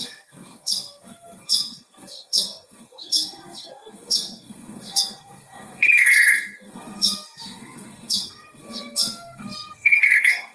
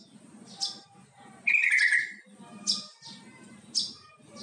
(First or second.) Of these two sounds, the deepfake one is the first